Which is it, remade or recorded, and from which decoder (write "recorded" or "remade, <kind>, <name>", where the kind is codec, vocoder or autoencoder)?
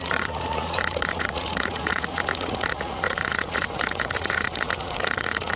remade, vocoder, Vocos